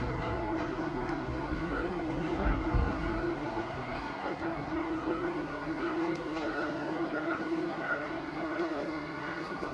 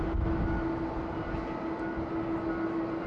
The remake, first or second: first